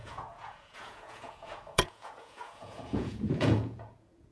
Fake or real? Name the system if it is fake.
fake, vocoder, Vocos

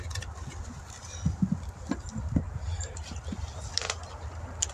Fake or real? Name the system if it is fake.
real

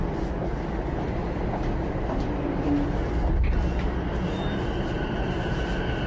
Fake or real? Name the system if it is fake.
real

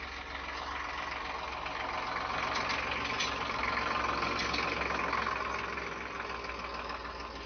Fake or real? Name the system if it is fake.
real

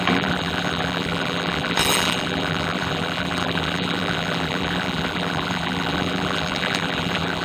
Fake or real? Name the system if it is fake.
fake, vocoder, BigVGAN v2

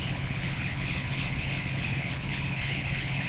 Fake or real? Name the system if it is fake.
fake, codec, HILCodec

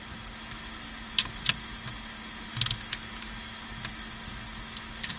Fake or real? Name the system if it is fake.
real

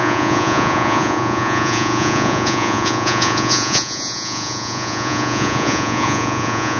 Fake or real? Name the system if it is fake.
fake, vocoder, Vocos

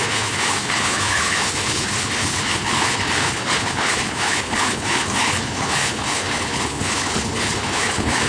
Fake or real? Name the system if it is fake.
fake, codec, HILCodec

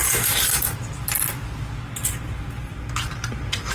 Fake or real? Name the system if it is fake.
real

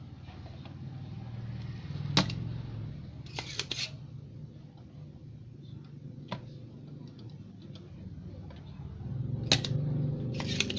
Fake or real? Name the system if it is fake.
real